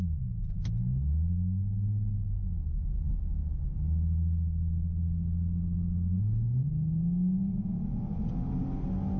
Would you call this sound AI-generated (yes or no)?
no